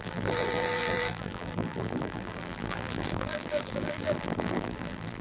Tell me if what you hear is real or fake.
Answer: fake